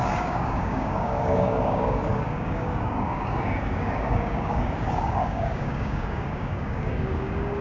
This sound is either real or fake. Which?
fake